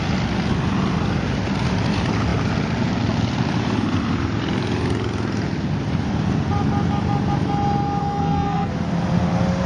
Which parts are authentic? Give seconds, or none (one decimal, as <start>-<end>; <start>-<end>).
0.0-8.0; 8.7-9.7